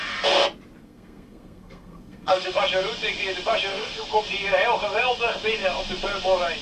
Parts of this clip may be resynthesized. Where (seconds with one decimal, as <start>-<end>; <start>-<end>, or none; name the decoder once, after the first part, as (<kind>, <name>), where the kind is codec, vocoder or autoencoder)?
0.8-2.6 (codec, SNAC); 3.7-4.2